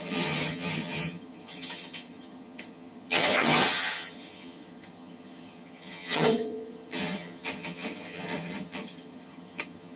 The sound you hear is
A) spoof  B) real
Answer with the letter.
A